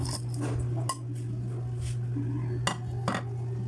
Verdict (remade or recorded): recorded